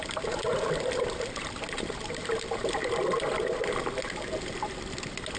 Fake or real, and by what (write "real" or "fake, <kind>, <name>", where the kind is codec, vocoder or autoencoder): real